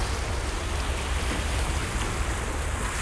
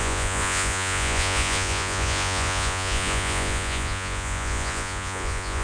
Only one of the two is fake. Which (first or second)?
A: second